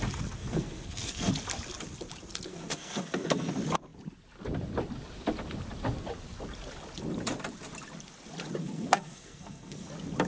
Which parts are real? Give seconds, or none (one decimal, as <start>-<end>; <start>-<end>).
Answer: 0.0-0.4; 1.3-2.5; 3.5-8.6; 9.9-10.3